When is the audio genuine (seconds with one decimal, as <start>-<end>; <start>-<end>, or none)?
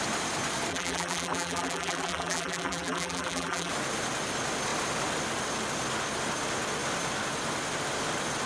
0.0-0.7; 3.7-8.5